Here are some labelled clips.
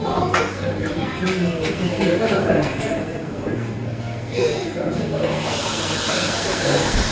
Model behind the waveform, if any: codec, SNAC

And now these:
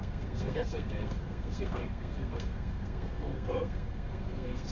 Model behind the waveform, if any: codec, SNAC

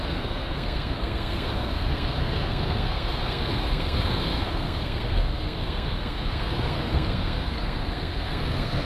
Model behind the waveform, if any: codec, SNAC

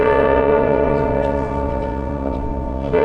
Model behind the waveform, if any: vocoder, WaveNeXt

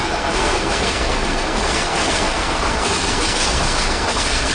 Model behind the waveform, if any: codec, SNAC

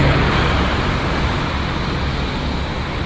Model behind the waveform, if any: none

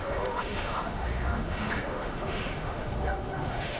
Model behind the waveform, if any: autoencoder, DAC-VAE